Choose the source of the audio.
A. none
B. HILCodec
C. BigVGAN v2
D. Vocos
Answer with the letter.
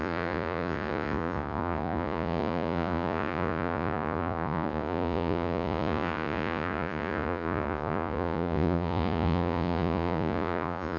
D